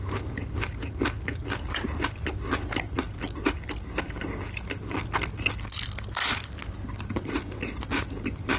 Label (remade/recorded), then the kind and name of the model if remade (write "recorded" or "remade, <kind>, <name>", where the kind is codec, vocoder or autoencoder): recorded